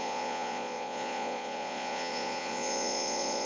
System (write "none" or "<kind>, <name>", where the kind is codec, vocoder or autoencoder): vocoder, Vocos